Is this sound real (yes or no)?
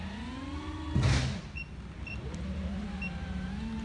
yes